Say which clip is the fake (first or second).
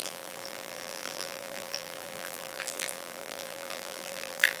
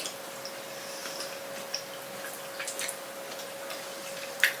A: first